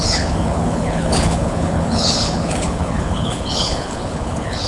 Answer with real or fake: fake